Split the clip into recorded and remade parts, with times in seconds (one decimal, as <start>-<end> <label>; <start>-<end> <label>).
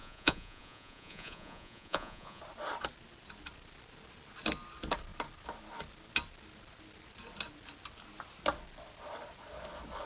0.0-2.4 remade; 2.4-10.1 recorded